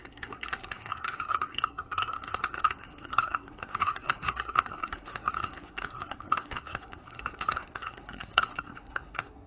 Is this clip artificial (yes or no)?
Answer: yes